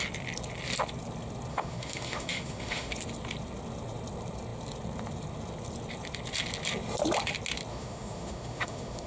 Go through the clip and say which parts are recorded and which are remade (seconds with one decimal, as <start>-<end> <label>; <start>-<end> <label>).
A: 0.0-1.5 recorded; 1.5-2.9 remade; 2.9-7.7 recorded; 7.7-9.1 remade